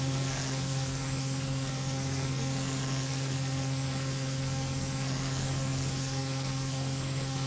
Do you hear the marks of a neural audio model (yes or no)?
yes